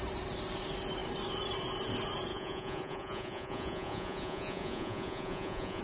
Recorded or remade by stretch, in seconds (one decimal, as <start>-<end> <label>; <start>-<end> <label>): 0.0-2.3 recorded; 2.3-5.8 remade